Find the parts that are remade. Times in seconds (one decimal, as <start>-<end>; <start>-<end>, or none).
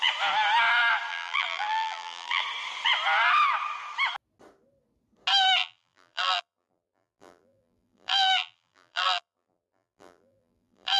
1.1-2.4; 5.6-11.0